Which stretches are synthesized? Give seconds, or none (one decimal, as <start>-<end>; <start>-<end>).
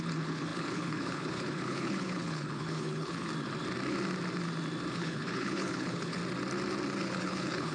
0.0-3.3; 4.9-6.2; 7.0-7.7